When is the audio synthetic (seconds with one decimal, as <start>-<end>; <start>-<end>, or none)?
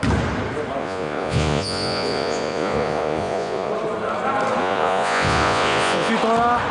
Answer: 0.8-3.7; 4.6-6.1